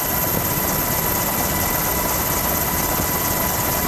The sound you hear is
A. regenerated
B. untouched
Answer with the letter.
B